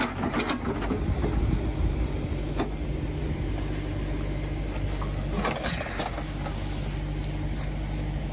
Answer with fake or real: real